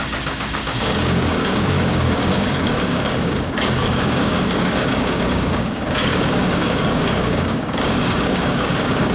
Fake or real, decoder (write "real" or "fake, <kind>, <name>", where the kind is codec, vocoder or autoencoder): fake, codec, DAC